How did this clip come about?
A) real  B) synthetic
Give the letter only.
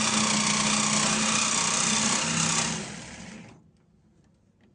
A